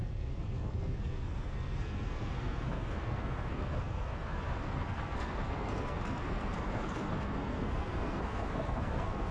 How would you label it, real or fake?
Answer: fake